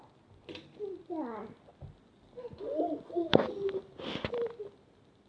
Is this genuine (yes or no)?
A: yes